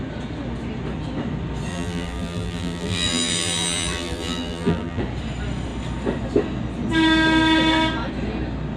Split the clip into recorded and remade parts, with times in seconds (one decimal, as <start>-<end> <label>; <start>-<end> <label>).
0.0-1.7 recorded; 1.7-5.0 remade; 5.0-8.8 recorded